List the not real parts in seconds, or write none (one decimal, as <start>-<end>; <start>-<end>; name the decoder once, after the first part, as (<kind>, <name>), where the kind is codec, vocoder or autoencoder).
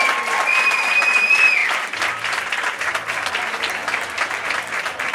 1.6-3.3 (vocoder, BigVGAN v2); 3.8-5.1